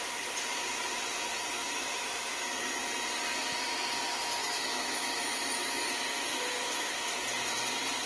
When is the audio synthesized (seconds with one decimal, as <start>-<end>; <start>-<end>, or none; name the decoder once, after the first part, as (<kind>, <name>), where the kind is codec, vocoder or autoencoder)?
1.6-2.5 (autoencoder, DAC-VAE); 4.4-5.8; 6.3-6.9